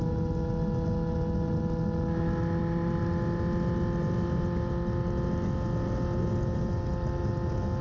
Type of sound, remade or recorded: recorded